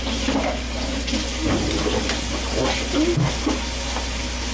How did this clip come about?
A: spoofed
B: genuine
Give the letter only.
B